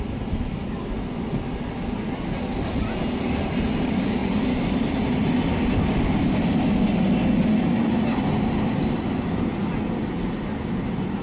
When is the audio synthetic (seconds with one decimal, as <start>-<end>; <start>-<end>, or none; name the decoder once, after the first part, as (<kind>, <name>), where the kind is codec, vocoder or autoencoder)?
none